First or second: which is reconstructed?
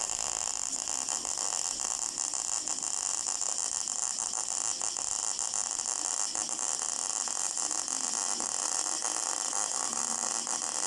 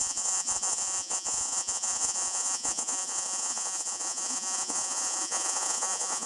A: second